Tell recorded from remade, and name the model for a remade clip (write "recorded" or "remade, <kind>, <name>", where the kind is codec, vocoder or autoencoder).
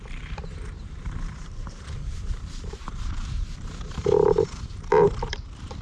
remade, vocoder, BigVGAN v2